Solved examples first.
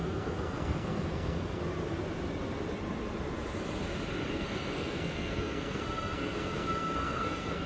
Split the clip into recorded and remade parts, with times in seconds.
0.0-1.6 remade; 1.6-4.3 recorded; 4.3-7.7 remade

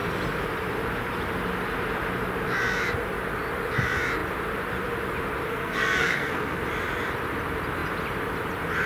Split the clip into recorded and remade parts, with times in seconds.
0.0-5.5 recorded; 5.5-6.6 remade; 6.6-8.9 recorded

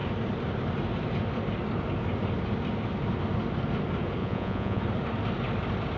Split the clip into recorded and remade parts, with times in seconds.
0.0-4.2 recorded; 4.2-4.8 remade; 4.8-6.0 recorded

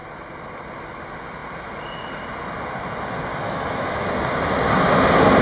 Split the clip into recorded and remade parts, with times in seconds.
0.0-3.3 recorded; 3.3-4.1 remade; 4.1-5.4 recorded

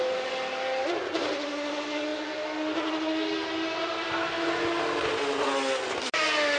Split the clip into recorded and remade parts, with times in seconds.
0.0-6.6 recorded

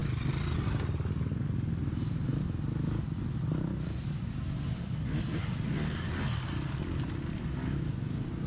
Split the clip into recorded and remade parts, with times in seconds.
0.0-8.5 recorded

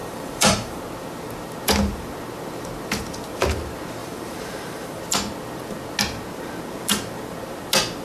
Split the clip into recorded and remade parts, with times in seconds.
0.0-0.8 remade; 0.8-4.0 recorded; 4.0-5.0 remade; 5.0-8.0 recorded

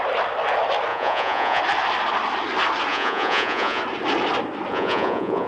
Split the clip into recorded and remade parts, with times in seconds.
0.0-0.9 recorded; 0.9-1.6 remade; 1.6-2.9 recorded; 2.9-3.8 remade; 3.8-4.7 recorded; 4.7-5.5 remade